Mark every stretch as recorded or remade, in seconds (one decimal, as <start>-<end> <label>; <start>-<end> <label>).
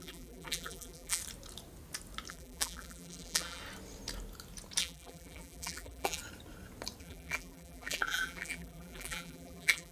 0.0-1.2 remade; 1.2-2.3 recorded; 2.3-3.6 remade; 3.6-4.8 recorded; 4.8-6.2 remade; 6.2-7.0 recorded; 7.0-9.9 remade